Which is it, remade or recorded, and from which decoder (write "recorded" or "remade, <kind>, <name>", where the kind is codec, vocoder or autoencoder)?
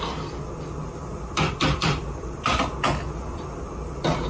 recorded